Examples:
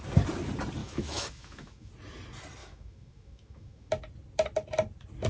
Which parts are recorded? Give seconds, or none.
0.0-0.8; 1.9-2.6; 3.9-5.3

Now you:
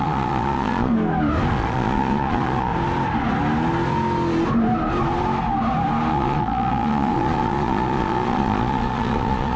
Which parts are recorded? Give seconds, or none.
0.9-1.5; 2.7-6.1

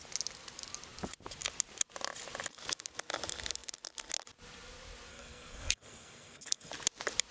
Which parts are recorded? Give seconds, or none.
0.0-5.1; 6.7-7.3

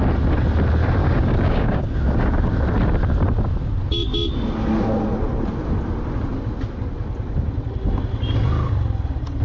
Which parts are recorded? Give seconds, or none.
0.0-1.0; 2.5-9.4

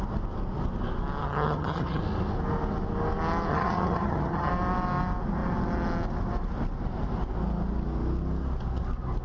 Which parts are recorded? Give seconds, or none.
0.0-1.2; 2.0-3.5; 4.5-9.2

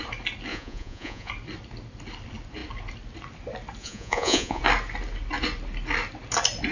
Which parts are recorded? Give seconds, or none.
0.0-0.5; 1.3-3.8; 4.6-6.7

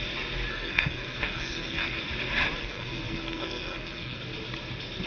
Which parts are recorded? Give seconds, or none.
0.0-0.5; 2.0-2.6; 4.2-5.1